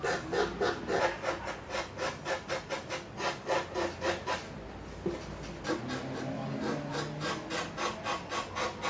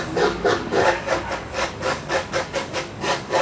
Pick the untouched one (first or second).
first